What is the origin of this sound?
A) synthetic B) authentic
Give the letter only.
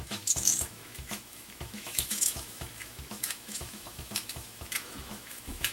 A